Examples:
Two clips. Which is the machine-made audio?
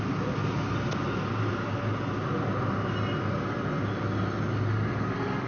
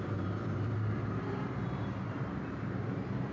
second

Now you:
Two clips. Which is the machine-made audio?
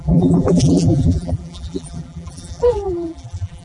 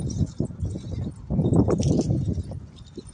first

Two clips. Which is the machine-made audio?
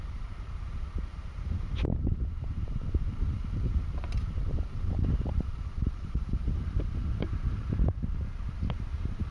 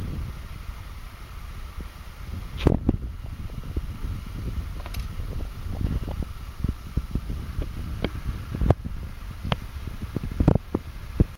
first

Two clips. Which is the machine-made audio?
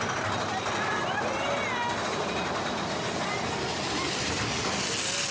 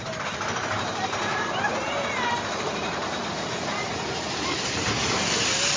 second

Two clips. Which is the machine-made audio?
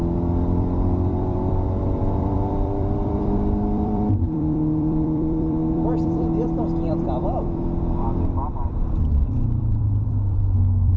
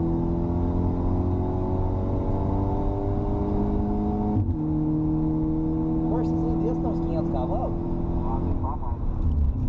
first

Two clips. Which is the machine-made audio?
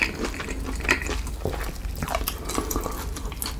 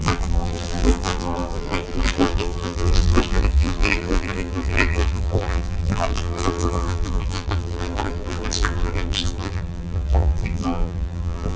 second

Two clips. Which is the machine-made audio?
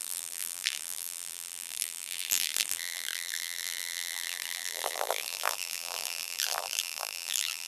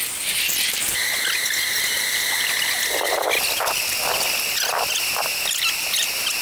first